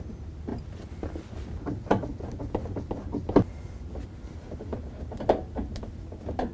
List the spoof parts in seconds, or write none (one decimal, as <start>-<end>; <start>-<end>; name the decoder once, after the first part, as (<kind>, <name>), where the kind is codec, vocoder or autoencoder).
none